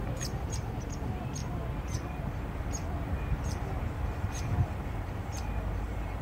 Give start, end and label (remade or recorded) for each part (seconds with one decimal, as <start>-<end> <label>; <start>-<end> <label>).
0.0-6.2 remade